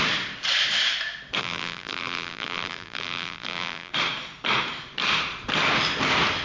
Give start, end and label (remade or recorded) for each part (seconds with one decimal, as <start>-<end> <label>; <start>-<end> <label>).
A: 0.0-1.4 recorded; 1.4-3.9 remade; 3.9-6.4 recorded